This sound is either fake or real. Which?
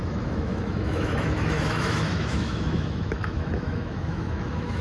fake